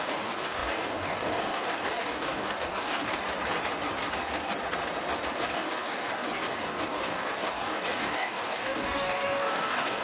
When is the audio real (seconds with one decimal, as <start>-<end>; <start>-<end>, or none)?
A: 3.1-5.4